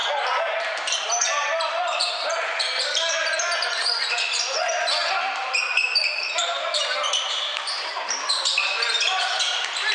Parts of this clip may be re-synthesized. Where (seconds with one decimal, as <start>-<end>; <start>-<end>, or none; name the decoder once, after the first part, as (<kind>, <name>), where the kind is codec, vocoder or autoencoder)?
0.6-9.9 (vocoder, BigVGAN v2)